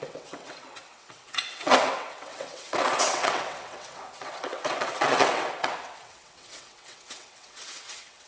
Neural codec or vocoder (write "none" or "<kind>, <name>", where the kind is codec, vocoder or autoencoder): vocoder, WaveNeXt